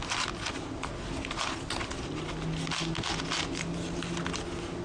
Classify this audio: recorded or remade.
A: recorded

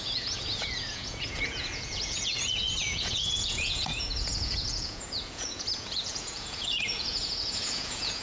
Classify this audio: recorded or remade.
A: remade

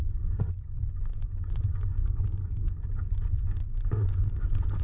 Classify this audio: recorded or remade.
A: remade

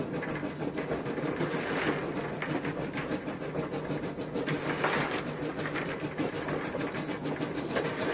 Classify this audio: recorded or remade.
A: recorded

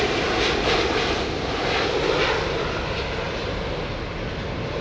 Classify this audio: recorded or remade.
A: recorded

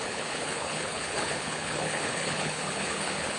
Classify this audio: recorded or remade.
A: remade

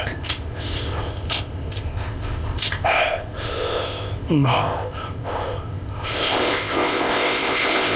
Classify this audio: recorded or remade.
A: remade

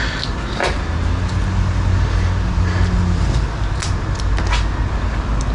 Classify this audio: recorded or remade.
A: recorded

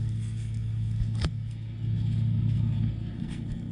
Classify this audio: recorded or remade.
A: remade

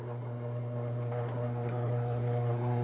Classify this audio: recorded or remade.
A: remade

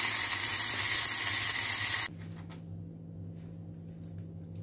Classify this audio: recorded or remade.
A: recorded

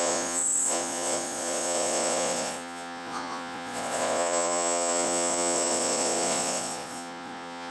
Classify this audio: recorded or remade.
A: remade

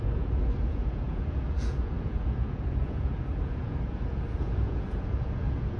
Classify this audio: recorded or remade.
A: remade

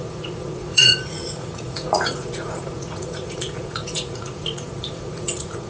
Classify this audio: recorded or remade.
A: remade